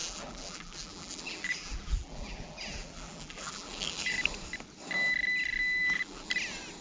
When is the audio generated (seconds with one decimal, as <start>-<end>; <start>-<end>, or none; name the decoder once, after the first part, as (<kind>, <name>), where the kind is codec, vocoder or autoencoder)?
0.0-4.1 (vocoder, BigVGAN v2); 5.8-6.3